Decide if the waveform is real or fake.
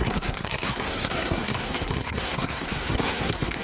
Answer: fake